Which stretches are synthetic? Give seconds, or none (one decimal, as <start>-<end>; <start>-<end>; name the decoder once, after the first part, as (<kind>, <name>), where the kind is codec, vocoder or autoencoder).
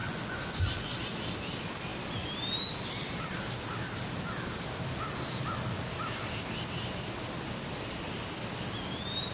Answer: 0.0-1.0 (vocoder, Vocos)